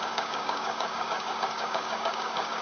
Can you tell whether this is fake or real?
fake